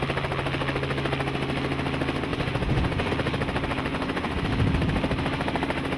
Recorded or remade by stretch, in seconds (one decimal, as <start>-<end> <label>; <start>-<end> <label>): 0.0-2.3 recorded; 2.3-3.1 remade; 3.1-3.9 recorded; 3.9-4.4 remade; 4.4-6.0 recorded